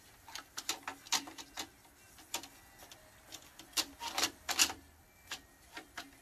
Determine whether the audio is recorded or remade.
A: recorded